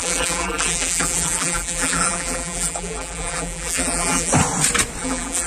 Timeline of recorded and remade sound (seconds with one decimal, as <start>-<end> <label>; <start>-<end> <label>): 0.0-4.3 remade; 4.3-5.0 recorded; 5.0-5.5 remade